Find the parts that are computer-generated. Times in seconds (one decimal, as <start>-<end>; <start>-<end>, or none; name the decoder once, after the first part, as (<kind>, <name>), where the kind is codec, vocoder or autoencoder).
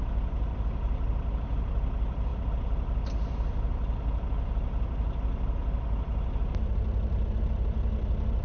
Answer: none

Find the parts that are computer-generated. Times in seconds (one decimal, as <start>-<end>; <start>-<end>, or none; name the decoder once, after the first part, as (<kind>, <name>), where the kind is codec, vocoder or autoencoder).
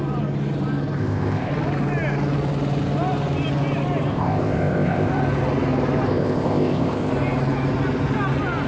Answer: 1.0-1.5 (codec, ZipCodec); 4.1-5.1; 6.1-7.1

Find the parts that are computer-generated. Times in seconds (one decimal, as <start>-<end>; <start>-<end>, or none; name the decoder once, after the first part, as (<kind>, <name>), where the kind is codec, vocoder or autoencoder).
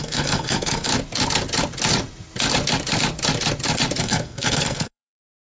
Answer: 0.0-0.9 (codec, SNAC); 4.0-5.4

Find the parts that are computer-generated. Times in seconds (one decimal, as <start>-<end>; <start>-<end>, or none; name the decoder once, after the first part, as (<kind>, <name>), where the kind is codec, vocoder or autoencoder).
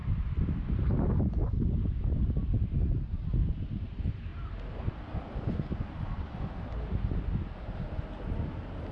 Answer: none